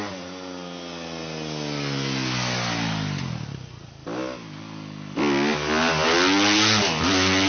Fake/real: real